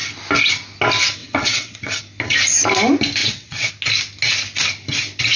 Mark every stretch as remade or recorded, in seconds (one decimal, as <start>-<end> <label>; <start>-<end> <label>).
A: 0.0-1.2 recorded; 1.2-2.0 remade; 2.0-3.2 recorded; 3.2-3.7 remade; 3.7-5.4 recorded